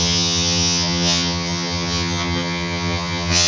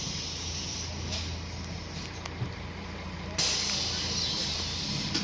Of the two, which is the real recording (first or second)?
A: second